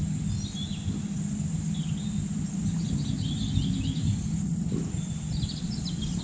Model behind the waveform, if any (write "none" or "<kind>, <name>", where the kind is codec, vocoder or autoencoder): none